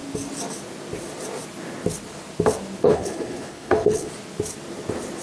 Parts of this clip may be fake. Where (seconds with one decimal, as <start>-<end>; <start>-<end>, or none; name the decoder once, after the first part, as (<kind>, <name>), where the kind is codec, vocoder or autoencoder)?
2.8-4.1 (codec, HILCodec)